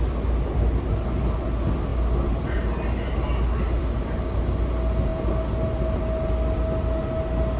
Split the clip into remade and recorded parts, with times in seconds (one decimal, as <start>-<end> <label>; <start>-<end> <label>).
0.0-7.6 recorded